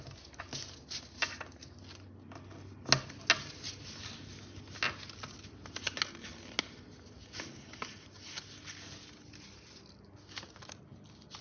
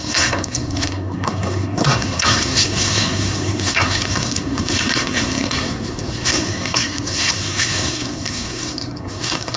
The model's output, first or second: second